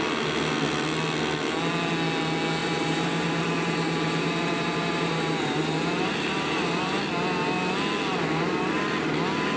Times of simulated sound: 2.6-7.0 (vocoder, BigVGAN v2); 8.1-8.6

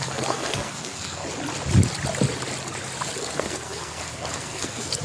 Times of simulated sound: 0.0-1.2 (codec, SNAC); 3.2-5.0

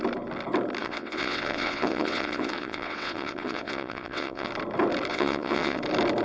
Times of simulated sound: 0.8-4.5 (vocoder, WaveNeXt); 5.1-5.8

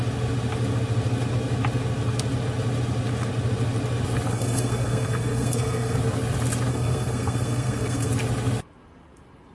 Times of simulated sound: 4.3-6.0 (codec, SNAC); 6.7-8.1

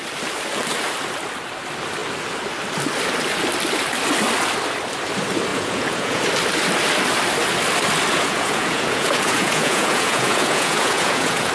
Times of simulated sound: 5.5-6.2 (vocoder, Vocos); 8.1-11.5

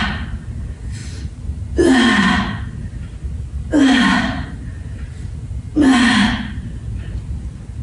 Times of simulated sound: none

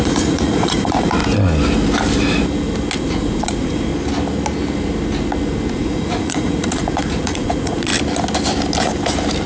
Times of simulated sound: 0.0-1.2 (vocoder, Vocos); 3.0-3.9; 5.7-7.9

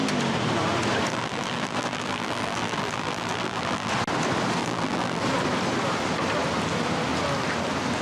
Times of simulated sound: 1.1-3.9 (vocoder, BigVGAN v2); 4.6-5.2